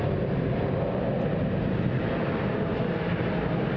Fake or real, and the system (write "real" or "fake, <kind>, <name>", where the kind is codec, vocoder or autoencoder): real